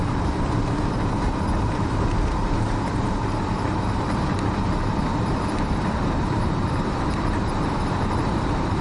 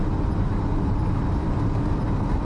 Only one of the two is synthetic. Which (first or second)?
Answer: first